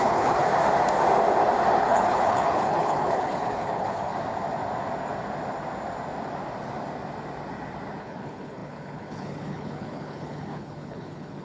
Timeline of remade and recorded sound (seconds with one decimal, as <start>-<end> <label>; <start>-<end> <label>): 0.0-0.5 remade; 0.5-1.8 recorded; 1.8-4.1 remade; 4.1-8.0 recorded; 8.0-11.4 remade